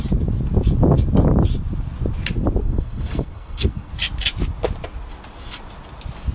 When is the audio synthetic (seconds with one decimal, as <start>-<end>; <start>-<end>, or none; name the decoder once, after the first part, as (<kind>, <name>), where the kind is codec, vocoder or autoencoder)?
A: 2.6-3.9 (codec, SNAC)